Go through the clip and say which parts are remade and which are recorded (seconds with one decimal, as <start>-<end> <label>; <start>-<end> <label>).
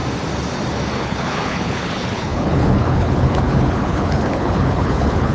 0.0-1.0 recorded; 1.0-5.3 remade